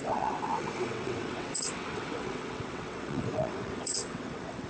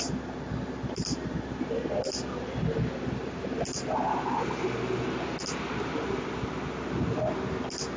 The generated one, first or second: first